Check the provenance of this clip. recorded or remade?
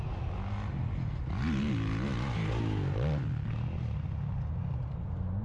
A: recorded